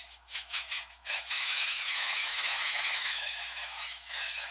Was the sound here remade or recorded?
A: remade